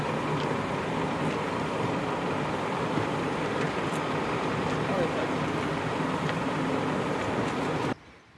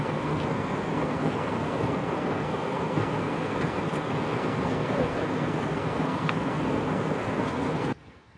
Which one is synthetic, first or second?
second